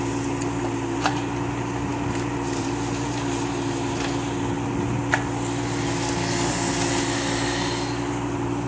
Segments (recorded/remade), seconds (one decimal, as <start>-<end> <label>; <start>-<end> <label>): 0.0-8.7 recorded